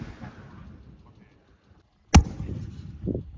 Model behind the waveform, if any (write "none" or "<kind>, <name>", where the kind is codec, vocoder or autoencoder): none